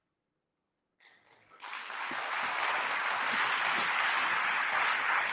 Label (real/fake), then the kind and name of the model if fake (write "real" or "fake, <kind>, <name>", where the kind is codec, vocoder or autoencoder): real